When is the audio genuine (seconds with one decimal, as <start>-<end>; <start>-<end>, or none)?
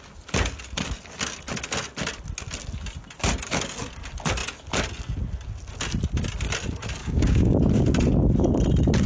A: 0.0-7.0; 7.6-9.1